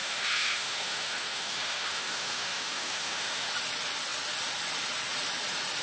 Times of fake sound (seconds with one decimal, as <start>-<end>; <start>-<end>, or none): 0.0-3.5

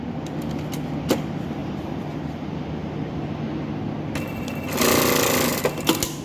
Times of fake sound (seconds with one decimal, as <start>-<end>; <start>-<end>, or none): none